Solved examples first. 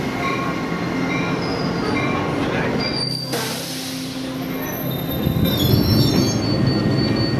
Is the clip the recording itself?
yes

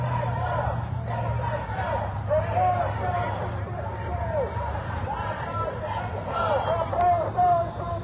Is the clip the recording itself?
no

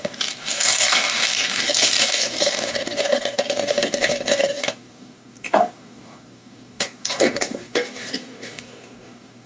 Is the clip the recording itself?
no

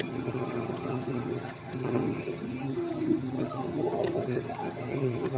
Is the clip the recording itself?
no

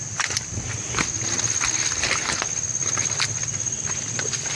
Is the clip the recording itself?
yes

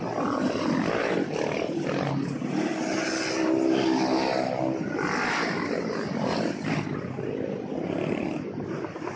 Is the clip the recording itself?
yes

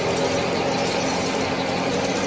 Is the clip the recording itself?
yes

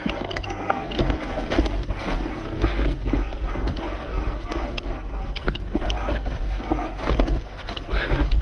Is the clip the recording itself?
no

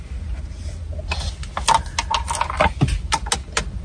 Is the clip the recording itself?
yes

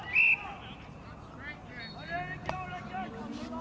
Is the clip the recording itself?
yes